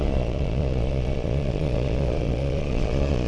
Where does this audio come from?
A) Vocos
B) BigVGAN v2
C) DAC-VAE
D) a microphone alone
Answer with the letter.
A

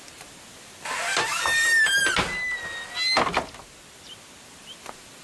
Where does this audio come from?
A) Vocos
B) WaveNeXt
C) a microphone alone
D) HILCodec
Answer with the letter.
C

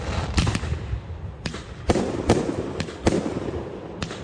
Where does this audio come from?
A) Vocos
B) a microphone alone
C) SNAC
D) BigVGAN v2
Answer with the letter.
B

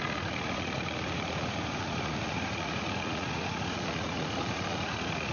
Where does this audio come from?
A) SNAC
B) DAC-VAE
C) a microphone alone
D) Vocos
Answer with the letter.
D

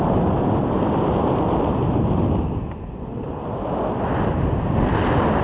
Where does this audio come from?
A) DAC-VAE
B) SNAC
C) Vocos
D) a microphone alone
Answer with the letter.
D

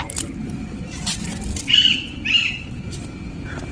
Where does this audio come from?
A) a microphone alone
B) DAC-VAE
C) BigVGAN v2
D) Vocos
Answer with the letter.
A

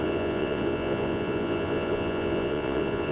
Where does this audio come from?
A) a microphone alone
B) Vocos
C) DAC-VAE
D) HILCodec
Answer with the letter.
B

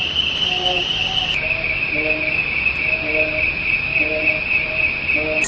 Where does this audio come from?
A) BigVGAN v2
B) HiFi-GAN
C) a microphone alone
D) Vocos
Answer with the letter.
C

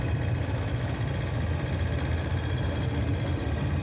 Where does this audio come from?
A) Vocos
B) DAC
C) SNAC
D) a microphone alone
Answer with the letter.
D